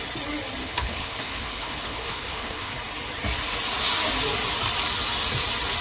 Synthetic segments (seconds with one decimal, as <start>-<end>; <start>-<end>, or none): 0.6-2.7